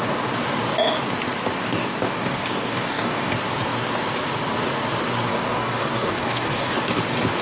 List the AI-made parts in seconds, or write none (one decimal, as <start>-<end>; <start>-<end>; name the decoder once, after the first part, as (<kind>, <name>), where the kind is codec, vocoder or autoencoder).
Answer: 1.6-3.3 (codec, DAC); 5.3-6.8